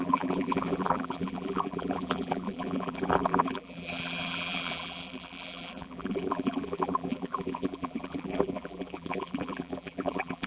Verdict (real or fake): fake